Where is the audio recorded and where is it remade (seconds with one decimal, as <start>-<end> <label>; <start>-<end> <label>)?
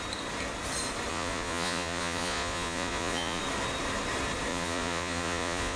0.0-1.1 recorded; 1.1-3.4 remade; 3.4-4.5 recorded; 4.5-5.8 remade